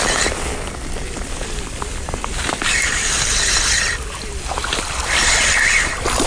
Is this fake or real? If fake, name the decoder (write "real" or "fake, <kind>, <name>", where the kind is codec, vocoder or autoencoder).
fake, vocoder, BigVGAN v2